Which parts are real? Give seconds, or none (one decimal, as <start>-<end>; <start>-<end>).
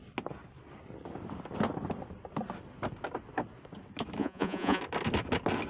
0.0-4.2; 4.8-5.7